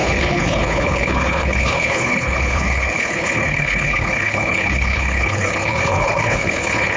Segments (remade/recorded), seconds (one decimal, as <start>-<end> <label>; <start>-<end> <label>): 0.0-7.0 remade

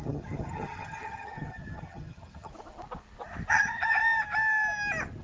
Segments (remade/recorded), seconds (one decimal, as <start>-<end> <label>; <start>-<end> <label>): 0.0-2.5 remade; 2.5-3.5 recorded; 3.5-4.0 remade; 4.0-5.2 recorded

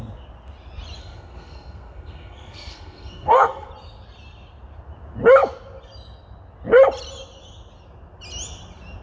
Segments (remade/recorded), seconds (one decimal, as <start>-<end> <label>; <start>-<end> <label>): 0.0-1.0 recorded; 1.0-3.7 remade; 3.7-9.0 recorded

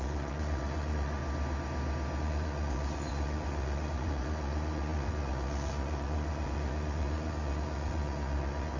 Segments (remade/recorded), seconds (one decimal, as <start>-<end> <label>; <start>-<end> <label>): 0.0-1.2 remade; 1.2-2.2 recorded; 2.2-8.8 remade

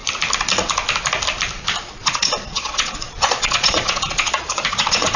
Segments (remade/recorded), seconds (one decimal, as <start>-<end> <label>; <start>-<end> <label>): 0.0-1.8 recorded; 1.8-5.2 remade

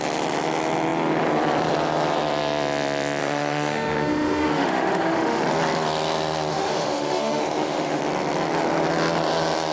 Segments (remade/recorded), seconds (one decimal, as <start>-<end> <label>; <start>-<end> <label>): 0.0-3.2 recorded; 3.2-5.4 remade; 5.4-6.5 recorded; 6.5-8.0 remade; 8.0-9.7 recorded

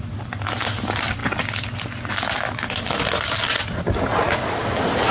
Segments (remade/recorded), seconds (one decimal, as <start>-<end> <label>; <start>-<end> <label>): 0.0-5.1 recorded